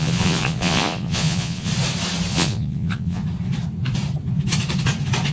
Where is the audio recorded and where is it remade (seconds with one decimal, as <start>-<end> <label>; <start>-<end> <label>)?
0.0-1.7 remade; 1.7-2.3 recorded; 2.3-3.2 remade; 3.2-5.3 recorded